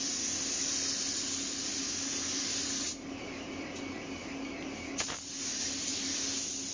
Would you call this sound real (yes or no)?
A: yes